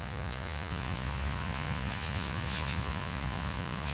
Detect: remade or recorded remade